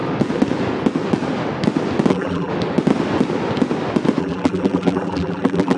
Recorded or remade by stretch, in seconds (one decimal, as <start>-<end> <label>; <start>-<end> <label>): 0.0-2.1 recorded; 2.1-2.5 remade; 2.5-4.2 recorded; 4.2-5.8 remade